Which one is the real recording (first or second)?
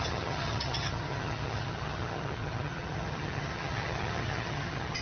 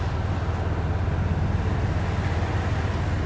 second